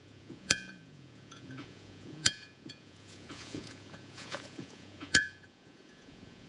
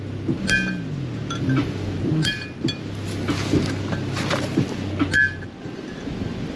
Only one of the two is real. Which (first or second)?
second